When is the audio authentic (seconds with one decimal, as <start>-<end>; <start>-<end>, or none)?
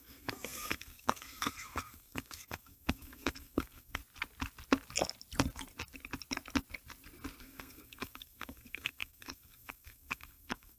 4.0-7.4